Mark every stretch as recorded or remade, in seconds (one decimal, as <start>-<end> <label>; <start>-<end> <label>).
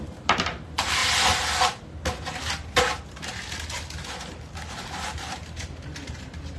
0.0-1.0 remade; 1.0-4.7 recorded; 4.7-6.6 remade